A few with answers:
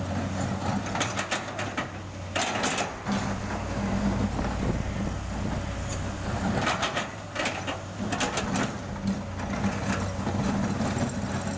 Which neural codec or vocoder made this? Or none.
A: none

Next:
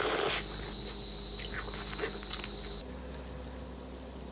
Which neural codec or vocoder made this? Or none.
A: none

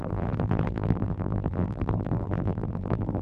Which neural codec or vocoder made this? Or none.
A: vocoder, BigVGAN v2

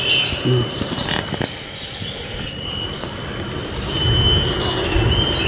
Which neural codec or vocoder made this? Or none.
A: none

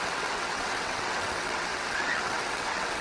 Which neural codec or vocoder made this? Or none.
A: vocoder, WaveNeXt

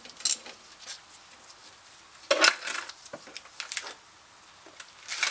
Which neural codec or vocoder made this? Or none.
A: none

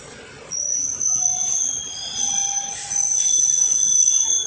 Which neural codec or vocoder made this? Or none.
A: none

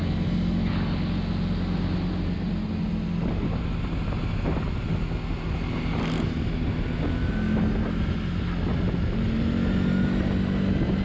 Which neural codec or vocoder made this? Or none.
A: none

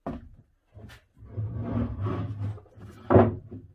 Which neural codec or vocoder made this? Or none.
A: none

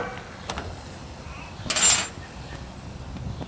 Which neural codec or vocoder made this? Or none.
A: none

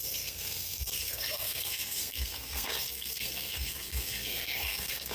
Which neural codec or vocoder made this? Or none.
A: codec, SNAC